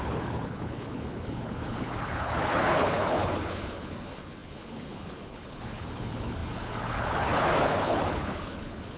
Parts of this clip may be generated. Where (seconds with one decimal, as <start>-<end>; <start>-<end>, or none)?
0.0-9.0